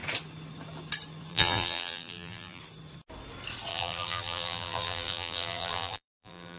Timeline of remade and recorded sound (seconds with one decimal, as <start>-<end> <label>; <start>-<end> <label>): 0.0-1.3 recorded; 1.3-2.6 remade; 2.6-3.7 recorded; 3.7-6.6 remade